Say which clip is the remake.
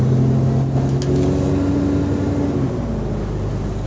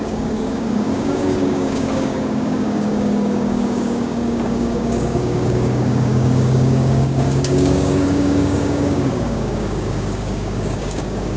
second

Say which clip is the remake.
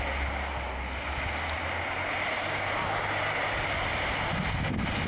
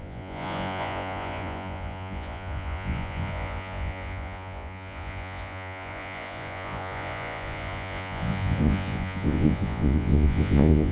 second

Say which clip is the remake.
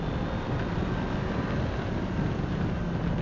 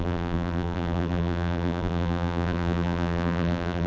second